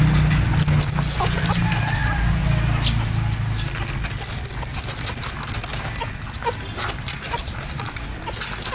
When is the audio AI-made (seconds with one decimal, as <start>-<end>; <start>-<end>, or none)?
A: 7.1-7.9